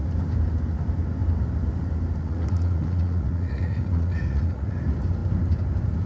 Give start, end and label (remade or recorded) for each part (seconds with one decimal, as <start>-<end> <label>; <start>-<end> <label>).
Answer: 0.0-2.2 recorded; 2.2-4.8 remade; 4.8-6.1 recorded